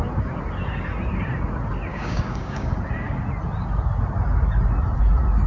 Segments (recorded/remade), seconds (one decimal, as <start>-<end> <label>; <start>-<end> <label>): 0.0-1.9 recorded; 1.9-2.7 remade; 2.7-5.5 recorded